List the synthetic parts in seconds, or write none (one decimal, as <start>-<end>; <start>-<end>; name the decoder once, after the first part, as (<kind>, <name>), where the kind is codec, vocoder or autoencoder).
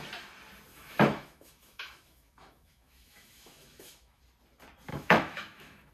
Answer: 0.7-4.2 (autoencoder, DAC-VAE); 4.9-5.9